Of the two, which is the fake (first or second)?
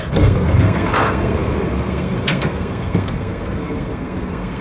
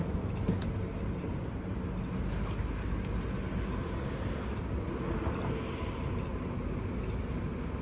first